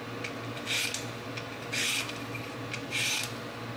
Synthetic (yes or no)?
no